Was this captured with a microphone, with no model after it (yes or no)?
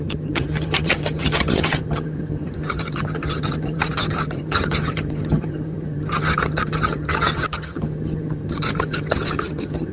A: no